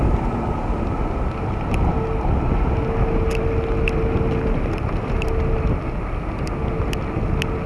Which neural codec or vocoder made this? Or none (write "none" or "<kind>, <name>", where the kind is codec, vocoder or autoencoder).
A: none